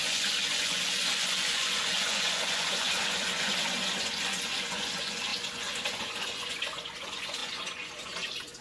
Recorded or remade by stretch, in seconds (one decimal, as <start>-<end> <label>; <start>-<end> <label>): 0.0-8.6 remade